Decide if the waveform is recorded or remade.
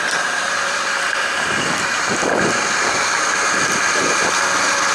recorded